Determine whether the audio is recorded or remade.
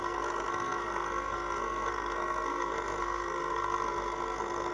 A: remade